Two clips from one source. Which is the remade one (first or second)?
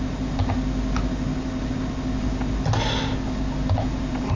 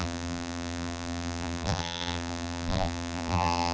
second